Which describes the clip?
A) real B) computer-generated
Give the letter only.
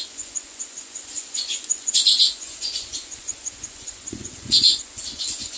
B